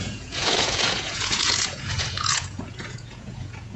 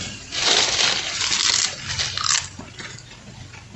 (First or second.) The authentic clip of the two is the second